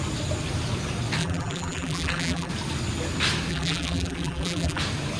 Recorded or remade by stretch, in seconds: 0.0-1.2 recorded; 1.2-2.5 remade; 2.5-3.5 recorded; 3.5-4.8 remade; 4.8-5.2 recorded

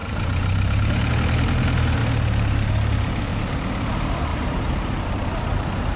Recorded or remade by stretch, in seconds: 0.0-1.1 remade; 1.1-2.0 recorded; 2.0-2.7 remade; 2.7-4.3 recorded; 4.3-6.0 remade

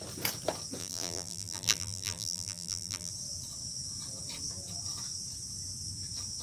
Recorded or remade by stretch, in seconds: 0.0-0.8 recorded; 0.8-3.1 remade; 3.1-6.4 recorded